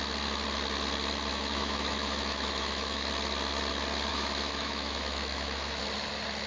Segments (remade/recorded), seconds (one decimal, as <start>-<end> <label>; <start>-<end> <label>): 0.0-1.3 recorded; 1.3-3.1 remade; 3.1-4.1 recorded; 4.1-5.8 remade; 5.8-6.5 recorded